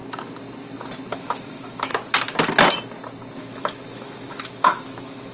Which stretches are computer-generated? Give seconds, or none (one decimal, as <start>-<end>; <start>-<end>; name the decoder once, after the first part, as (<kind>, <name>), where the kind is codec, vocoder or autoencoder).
1.1-1.9 (autoencoder, DAC-VAE); 3.4-5.3

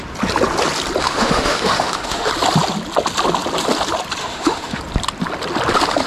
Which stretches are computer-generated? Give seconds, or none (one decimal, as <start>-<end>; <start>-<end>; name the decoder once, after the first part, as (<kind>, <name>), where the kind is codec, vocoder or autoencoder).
1.0-2.3 (autoencoder, DAC-VAE); 4.2-4.8

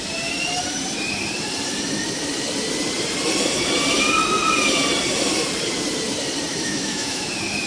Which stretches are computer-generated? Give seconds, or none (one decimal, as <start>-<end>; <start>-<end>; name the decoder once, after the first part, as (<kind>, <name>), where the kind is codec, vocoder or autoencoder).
6.5-7.3 (autoencoder, DAC-VAE)

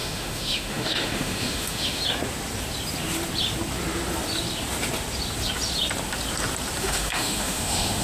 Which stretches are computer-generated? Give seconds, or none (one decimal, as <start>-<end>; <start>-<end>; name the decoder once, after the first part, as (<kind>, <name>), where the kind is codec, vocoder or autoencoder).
0.0-2.0 (autoencoder, DAC-VAE); 6.8-8.0

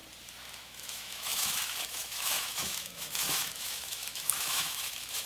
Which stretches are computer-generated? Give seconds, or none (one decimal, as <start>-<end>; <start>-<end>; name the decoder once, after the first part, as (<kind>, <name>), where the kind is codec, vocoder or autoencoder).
0.6-5.3 (autoencoder, DAC-VAE)

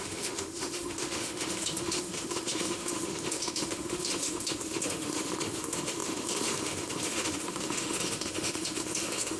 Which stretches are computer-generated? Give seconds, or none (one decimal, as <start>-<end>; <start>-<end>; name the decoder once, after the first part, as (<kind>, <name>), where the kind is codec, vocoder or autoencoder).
0.0-9.4 (autoencoder, DAC-VAE)

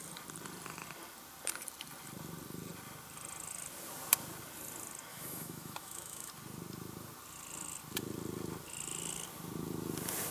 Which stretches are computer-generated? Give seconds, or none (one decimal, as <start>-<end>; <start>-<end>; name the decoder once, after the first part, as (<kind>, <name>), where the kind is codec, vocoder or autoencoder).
5.1-6.3 (autoencoder, DAC-VAE)

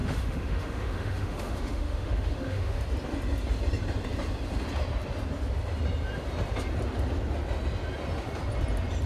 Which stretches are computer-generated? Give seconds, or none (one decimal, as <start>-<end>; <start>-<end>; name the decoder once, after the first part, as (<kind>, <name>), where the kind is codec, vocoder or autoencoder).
0.0-2.8 (autoencoder, DAC-VAE)